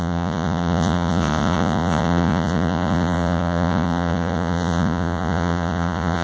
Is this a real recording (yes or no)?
no